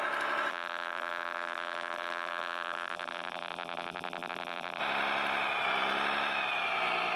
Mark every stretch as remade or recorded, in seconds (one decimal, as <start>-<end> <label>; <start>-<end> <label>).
0.0-0.5 recorded; 0.5-4.8 remade; 4.8-7.2 recorded